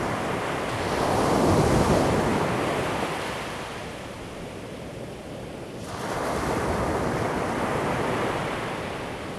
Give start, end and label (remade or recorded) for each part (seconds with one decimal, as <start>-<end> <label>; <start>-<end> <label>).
0.0-9.4 recorded